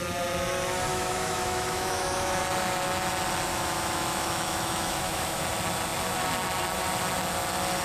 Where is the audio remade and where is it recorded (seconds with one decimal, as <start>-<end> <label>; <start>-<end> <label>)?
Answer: 0.0-0.9 recorded; 0.9-2.4 remade; 2.4-3.5 recorded; 3.5-5.4 remade; 5.4-7.8 recorded